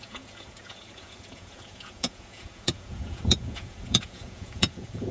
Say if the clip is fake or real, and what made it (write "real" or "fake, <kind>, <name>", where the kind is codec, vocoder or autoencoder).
fake, vocoder, Vocos